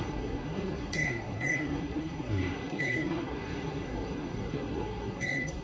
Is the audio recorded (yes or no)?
no